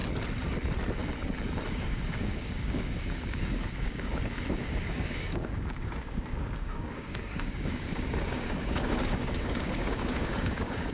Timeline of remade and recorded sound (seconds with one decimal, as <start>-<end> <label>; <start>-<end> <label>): 0.0-1.7 recorded; 1.7-10.9 remade